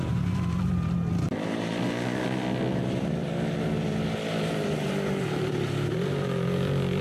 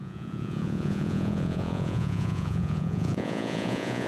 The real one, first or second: first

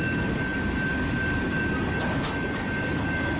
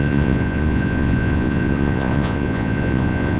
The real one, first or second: first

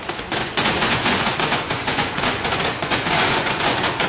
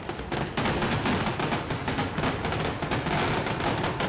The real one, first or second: second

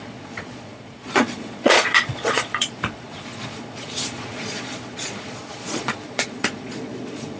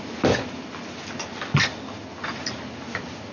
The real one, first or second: second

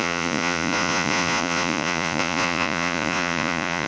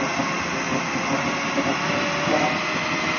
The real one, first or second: second